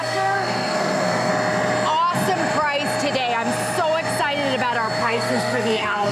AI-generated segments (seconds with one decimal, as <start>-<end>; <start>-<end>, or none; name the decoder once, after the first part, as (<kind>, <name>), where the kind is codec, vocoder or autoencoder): 0.0-1.3 (codec, SNAC); 5.0-6.1